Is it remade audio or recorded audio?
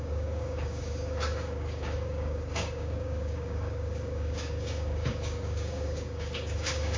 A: remade